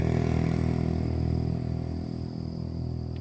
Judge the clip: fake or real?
real